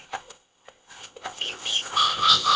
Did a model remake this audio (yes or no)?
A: yes